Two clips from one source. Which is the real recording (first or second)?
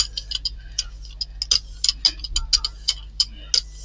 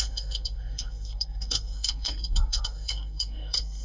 first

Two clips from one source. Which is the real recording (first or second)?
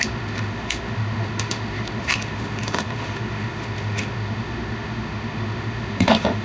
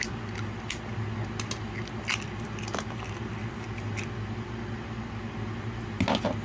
second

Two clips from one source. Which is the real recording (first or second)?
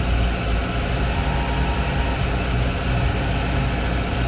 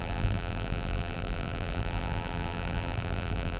first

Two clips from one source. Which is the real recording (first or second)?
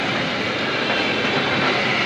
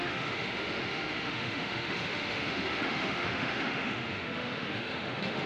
first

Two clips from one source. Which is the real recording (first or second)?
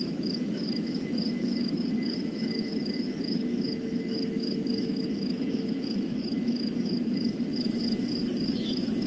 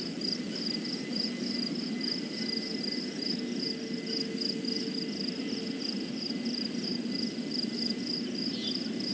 second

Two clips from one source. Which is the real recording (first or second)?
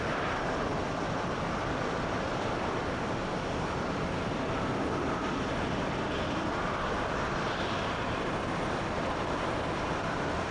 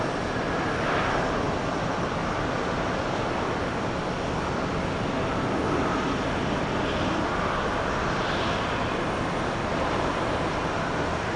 second